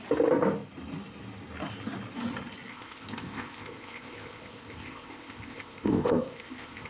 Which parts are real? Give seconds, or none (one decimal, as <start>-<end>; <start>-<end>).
0.0-2.7

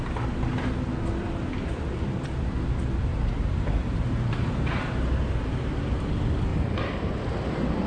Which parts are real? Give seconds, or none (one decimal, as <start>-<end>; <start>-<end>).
0.0-3.1; 5.8-7.9

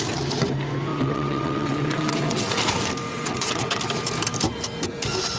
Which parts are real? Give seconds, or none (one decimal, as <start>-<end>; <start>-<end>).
0.0-0.9; 2.5-3.1; 3.8-5.4

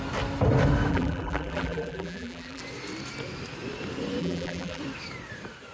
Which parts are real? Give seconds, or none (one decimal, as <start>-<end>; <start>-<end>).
0.0-0.9; 2.6-4.2; 4.8-5.7

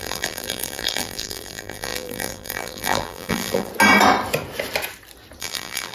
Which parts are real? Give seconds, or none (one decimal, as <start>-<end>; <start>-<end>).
3.7-5.4

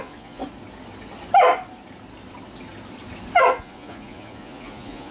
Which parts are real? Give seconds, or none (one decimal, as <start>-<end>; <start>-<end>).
0.4-3.5